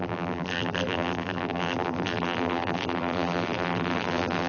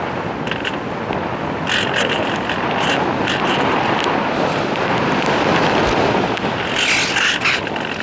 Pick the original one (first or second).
second